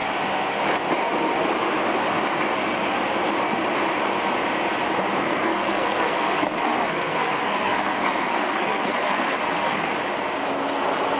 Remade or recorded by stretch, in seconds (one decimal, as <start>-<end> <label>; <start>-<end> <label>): 0.0-5.2 recorded; 5.2-9.9 remade; 9.9-11.2 recorded